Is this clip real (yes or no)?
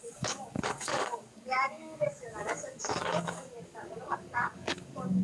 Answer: no